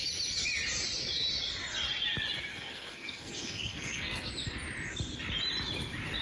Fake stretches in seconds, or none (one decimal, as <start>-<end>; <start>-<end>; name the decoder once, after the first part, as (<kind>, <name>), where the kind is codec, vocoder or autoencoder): 2.5-4.3 (codec, SNAC)